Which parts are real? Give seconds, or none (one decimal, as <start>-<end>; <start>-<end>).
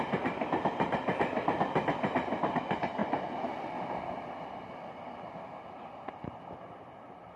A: 0.0-3.0; 3.7-7.4